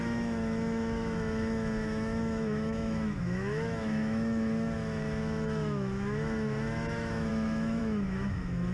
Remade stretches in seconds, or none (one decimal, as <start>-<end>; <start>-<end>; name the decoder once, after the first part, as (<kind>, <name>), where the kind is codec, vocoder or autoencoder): 0.0-8.7 (autoencoder, DAC-VAE)